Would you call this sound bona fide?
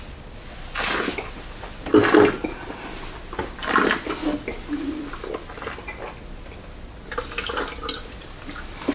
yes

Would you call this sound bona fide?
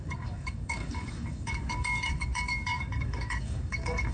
no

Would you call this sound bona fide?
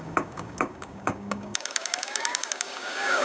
no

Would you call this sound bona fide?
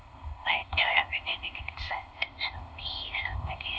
no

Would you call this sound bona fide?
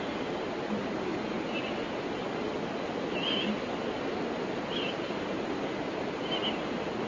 yes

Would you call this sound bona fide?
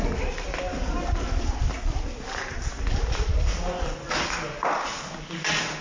yes